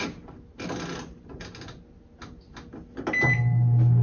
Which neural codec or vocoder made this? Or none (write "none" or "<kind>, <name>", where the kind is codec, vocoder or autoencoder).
none